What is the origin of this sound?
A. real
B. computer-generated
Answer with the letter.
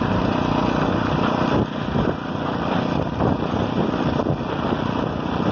A